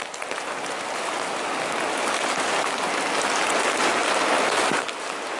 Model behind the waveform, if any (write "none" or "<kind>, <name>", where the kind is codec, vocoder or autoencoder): none